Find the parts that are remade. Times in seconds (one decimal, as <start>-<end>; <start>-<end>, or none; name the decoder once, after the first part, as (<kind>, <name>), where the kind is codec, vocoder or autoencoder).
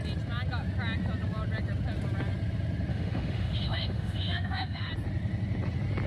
2.9-4.9 (autoencoder, DAC-VAE)